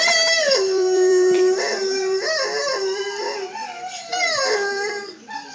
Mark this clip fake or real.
fake